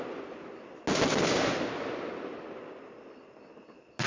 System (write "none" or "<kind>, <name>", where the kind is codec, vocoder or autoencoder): none